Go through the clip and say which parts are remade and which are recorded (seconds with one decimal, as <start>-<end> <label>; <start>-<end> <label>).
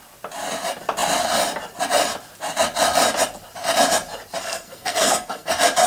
0.0-4.4 recorded; 4.4-5.5 remade; 5.5-5.9 recorded